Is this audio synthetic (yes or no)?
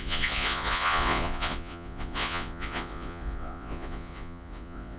yes